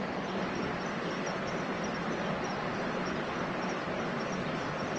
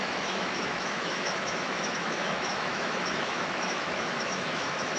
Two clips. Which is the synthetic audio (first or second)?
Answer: second